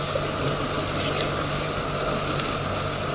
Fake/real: real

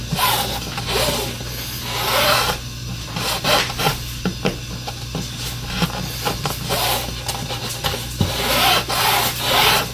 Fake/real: real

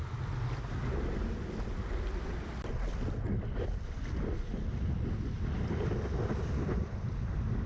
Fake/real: real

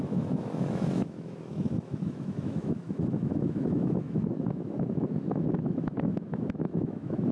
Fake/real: fake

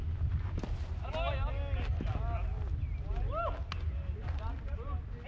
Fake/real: real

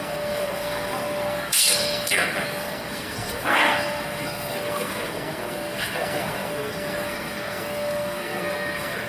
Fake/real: fake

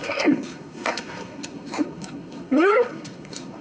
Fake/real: fake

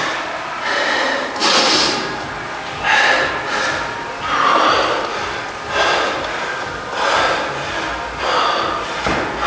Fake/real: real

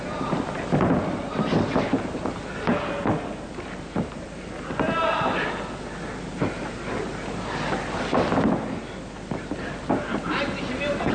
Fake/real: real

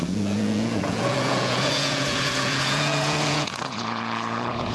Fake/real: fake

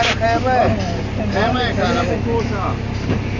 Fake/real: real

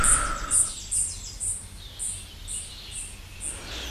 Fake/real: real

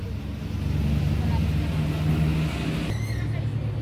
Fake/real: real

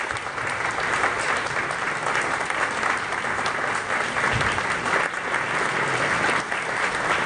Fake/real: real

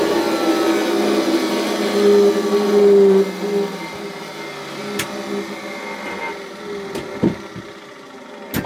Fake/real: real